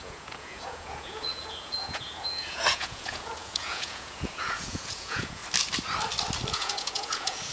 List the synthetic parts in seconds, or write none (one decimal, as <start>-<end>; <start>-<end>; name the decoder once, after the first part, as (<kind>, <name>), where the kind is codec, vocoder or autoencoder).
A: 0.0-5.4 (vocoder, Vocos); 6.5-7.5